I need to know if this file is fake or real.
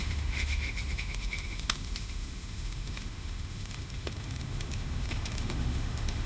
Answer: fake